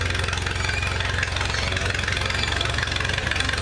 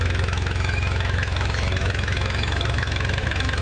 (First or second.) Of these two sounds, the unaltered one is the first